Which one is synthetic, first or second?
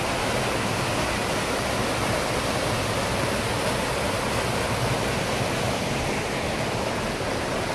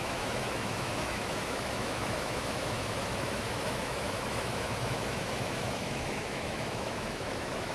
second